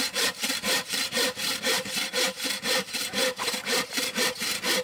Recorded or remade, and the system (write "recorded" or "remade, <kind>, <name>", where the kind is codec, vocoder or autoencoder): remade, vocoder, BigVGAN v2